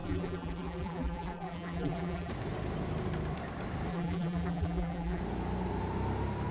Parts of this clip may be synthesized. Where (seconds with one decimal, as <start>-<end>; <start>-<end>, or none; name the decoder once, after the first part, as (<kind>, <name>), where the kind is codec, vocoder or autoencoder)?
0.0-2.3 (vocoder, BigVGAN v2); 3.9-5.2